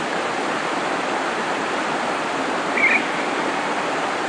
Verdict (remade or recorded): recorded